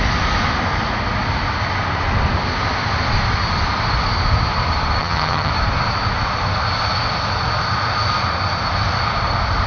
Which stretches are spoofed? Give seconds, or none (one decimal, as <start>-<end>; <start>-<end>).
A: 5.0-5.5